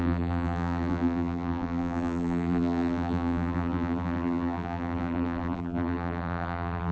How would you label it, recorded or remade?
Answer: remade